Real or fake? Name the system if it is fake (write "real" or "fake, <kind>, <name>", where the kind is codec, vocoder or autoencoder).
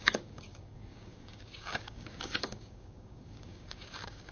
fake, codec, DAC